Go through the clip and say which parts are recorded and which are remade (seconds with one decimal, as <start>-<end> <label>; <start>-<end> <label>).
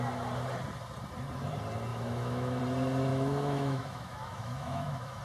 0.0-1.9 recorded; 1.9-2.6 remade; 2.6-3.1 recorded; 3.1-5.2 remade